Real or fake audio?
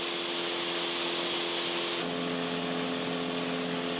real